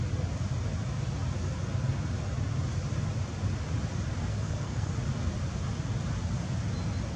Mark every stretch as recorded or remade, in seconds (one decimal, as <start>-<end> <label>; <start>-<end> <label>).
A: 0.0-4.3 recorded; 4.3-4.9 remade; 4.9-7.2 recorded